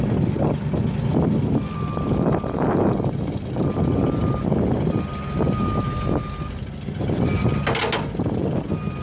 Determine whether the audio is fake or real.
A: real